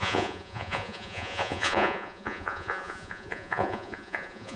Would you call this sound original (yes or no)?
no